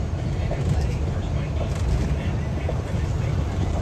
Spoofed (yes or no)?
no